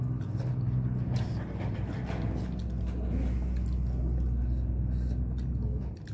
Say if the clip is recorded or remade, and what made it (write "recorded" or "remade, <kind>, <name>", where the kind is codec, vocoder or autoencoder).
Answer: recorded